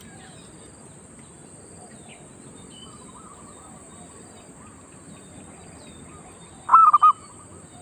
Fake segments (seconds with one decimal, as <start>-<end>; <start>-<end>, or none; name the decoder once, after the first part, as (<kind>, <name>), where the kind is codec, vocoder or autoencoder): none